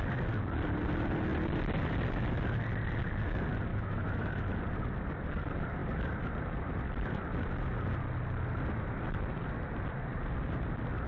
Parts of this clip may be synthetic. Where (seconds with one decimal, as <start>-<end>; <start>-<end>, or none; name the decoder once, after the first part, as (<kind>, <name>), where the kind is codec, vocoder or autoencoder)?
3.7-4.4 (autoencoder, DAC-VAE)